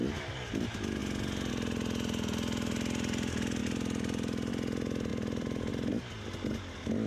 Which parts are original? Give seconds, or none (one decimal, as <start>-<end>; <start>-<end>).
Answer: 0.0-5.1; 5.7-7.1